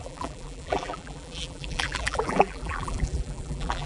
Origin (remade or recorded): remade